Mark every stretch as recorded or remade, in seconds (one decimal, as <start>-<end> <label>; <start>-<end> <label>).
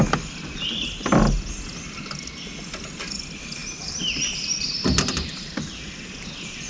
0.0-6.7 recorded